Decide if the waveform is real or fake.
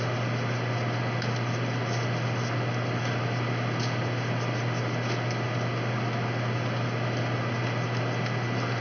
real